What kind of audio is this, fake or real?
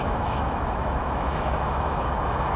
fake